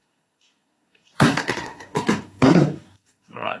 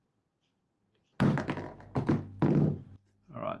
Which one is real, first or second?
second